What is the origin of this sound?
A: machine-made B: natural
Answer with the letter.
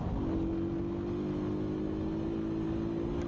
B